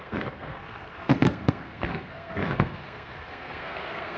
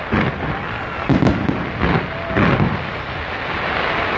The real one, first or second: second